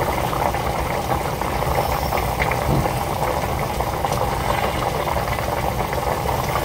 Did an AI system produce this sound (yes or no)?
no